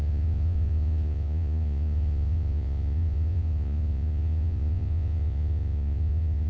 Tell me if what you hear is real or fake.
fake